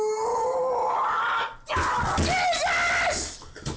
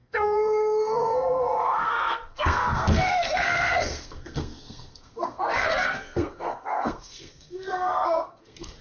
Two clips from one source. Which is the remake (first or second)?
second